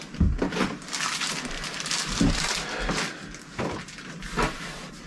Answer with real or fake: real